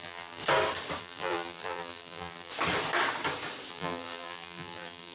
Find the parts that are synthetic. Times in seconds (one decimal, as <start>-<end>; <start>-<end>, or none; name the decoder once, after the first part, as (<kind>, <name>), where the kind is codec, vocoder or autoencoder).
0.0-0.4 (vocoder, BigVGAN v2); 1.0-2.5; 3.7-5.1